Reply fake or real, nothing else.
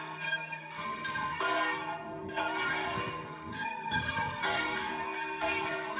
fake